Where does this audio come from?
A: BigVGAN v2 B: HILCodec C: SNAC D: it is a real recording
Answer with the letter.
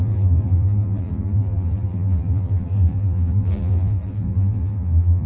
A